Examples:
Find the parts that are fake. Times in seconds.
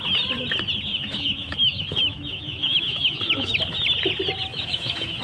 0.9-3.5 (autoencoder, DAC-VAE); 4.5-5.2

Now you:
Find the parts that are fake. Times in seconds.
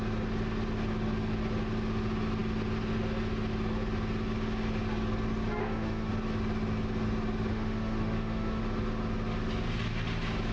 5.6-6.1 (autoencoder, DAC-VAE); 7.5-8.6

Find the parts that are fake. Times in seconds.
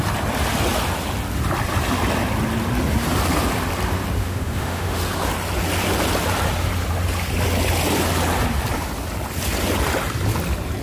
4.2-5.0 (autoencoder, DAC-VAE)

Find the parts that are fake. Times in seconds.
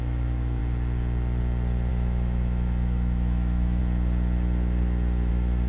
0.0-0.6 (autoencoder, DAC-VAE); 1.9-3.8; 5.3-5.7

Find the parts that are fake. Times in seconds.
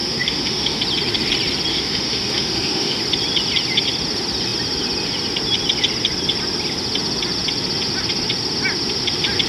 0.0-0.8 (autoencoder, DAC-VAE); 1.7-3.0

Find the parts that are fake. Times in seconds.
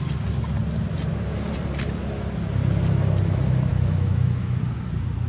3.7-4.6 (autoencoder, DAC-VAE)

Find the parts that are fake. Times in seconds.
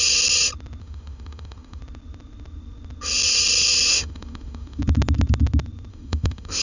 0.8-1.8 (autoencoder, DAC-VAE); 3.9-4.8; 5.9-6.6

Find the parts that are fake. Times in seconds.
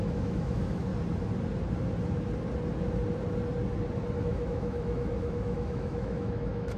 0.0-0.9 (autoencoder, DAC-VAE); 4.2-6.8